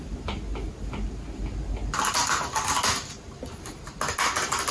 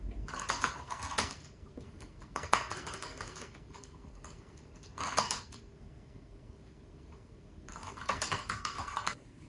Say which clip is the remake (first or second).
second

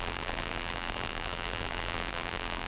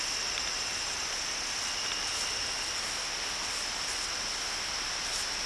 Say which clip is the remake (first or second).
first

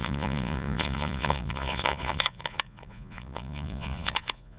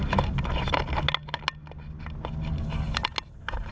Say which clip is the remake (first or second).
first